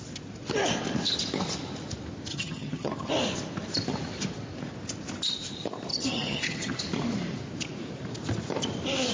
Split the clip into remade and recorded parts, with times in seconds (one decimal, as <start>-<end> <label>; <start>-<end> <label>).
0.0-2.3 recorded; 2.3-3.1 remade; 3.1-5.9 recorded; 5.9-6.8 remade; 6.8-9.1 recorded